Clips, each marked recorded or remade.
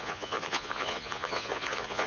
remade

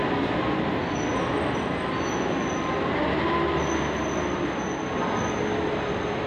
recorded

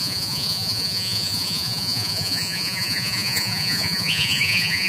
remade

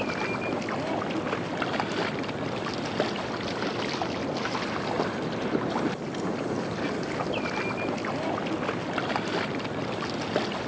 recorded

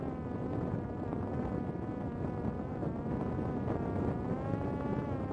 recorded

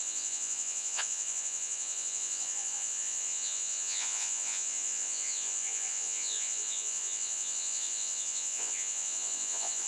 remade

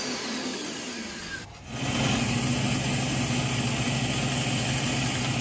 recorded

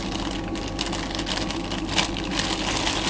recorded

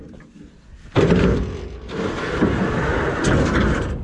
recorded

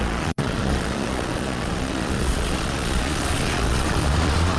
remade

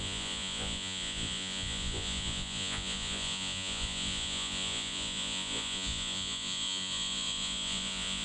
remade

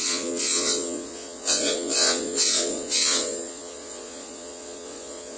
remade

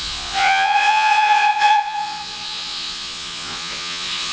remade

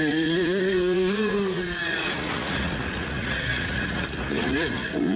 remade